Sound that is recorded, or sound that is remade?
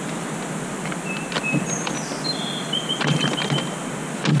recorded